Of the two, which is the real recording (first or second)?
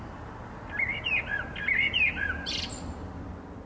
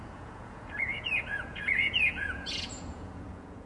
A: first